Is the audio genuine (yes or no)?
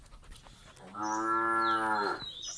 yes